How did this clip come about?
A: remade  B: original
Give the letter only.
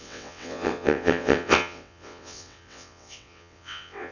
A